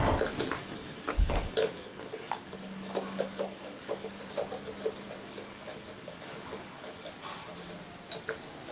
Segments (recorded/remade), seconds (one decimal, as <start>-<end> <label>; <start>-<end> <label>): 0.0-0.6 recorded; 0.6-4.3 remade; 4.3-5.2 recorded; 5.2-7.1 remade; 7.1-8.7 recorded